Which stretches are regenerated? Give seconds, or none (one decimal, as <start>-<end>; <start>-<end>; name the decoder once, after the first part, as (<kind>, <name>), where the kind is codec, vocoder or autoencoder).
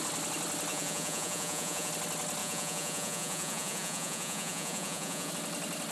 0.7-1.9 (vocoder, Vocos); 2.4-5.3